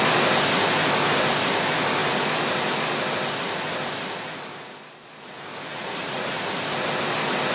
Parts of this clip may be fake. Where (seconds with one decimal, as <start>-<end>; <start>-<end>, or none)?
5.7-6.4